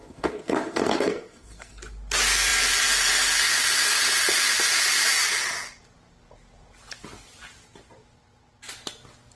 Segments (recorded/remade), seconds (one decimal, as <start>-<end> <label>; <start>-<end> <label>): 0.0-1.8 remade; 1.8-9.4 recorded